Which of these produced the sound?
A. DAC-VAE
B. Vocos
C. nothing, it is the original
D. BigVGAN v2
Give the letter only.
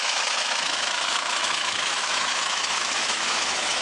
A